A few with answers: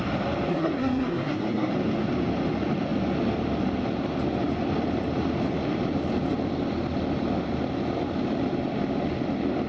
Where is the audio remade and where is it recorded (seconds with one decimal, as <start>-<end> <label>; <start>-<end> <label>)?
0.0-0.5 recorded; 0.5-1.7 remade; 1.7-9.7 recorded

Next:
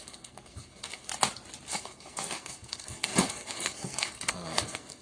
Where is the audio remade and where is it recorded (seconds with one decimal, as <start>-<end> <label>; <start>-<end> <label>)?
0.0-1.1 remade; 1.1-1.7 recorded; 1.7-5.0 remade

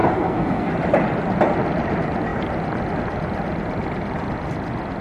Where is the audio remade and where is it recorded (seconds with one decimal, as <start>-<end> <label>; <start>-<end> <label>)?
0.0-0.7 remade; 0.7-5.0 recorded